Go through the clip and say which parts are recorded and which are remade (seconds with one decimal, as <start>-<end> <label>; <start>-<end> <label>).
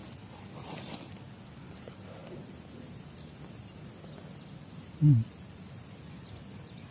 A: 0.0-6.9 recorded